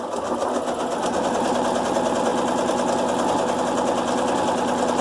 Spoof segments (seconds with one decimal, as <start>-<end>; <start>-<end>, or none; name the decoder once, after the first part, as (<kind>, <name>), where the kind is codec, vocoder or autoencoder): none